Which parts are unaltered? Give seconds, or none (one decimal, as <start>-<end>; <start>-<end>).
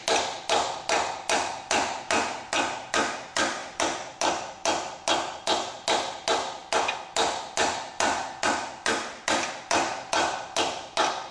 0.0-11.3